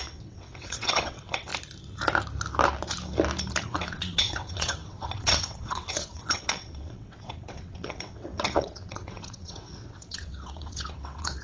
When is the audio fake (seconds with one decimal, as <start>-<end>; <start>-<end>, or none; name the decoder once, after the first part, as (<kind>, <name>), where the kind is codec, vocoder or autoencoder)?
0.0-1.5 (vocoder, WaveNeXt); 3.6-11.4